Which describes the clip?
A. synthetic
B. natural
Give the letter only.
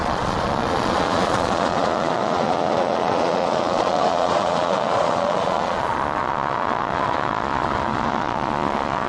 A